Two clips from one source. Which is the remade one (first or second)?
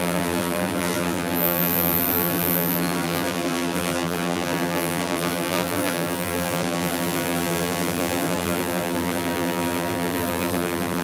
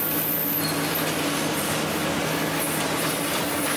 first